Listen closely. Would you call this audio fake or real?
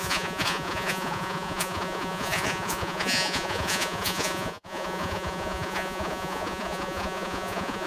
fake